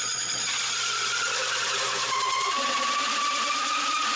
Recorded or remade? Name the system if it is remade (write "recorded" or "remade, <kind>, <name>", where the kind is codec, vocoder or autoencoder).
recorded